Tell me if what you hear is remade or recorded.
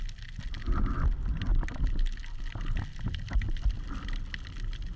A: recorded